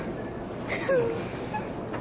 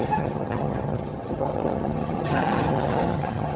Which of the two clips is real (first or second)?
first